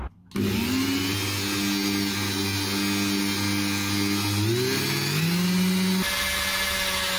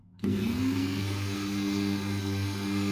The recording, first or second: first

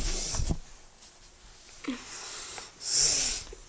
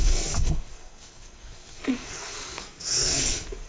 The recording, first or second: first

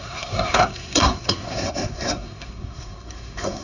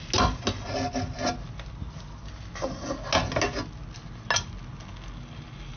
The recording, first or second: second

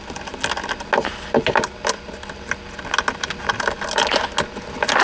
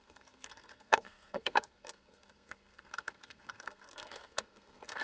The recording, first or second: first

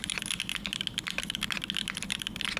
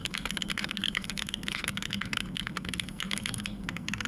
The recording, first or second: first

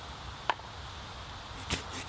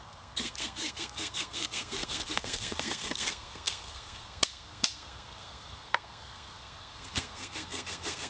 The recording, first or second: first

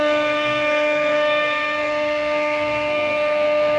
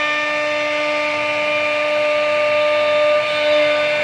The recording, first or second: second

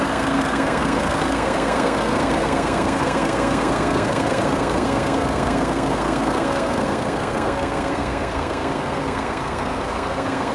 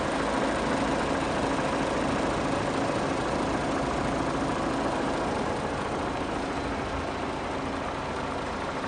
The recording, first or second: second